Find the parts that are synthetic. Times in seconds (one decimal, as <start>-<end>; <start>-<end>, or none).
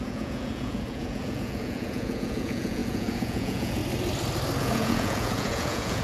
0.0-3.8; 4.6-6.0